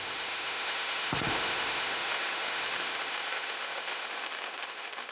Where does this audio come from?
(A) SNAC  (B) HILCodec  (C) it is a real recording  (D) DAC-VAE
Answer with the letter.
D